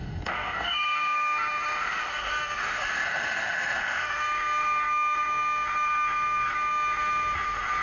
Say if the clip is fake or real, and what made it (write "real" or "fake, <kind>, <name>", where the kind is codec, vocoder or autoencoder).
fake, autoencoder, DAC-VAE